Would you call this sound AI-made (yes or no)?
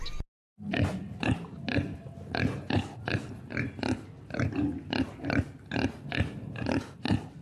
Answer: no